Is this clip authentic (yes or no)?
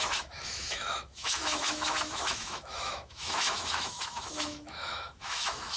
no